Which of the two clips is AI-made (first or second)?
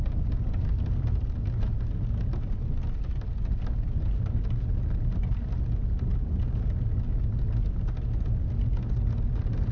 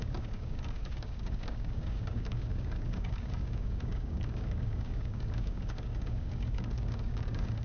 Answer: second